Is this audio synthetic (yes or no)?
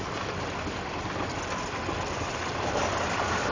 no